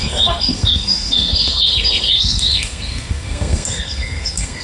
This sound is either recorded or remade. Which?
remade